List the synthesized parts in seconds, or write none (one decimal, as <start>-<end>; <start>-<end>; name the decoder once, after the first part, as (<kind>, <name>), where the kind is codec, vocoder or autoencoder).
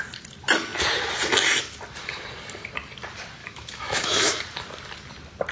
3.4-4.4 (autoencoder, DAC-VAE)